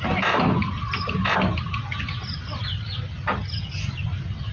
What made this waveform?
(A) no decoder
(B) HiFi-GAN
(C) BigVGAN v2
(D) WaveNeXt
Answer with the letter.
A